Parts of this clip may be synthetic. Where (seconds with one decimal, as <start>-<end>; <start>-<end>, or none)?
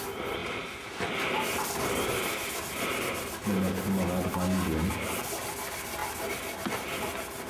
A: none